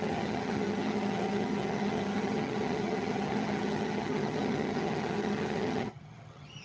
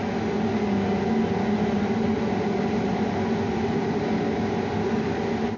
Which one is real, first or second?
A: second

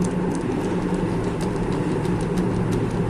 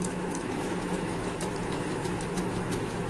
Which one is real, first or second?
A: first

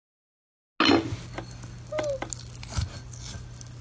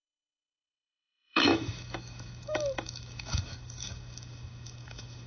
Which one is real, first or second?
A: first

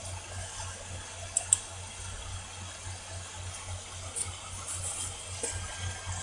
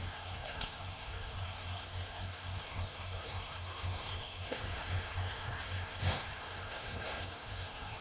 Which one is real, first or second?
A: first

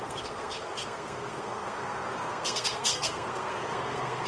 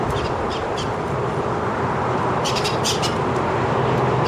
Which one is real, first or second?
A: second